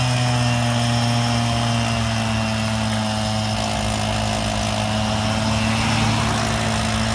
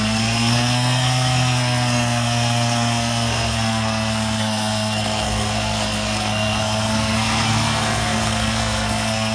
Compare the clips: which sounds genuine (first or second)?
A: first